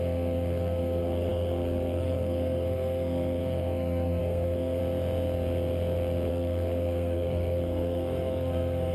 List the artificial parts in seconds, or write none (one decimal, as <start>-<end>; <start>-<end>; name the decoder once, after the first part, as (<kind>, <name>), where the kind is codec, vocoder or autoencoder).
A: 0.0-4.8 (codec, SNAC); 6.3-8.9